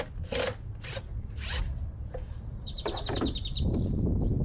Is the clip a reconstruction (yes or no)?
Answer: no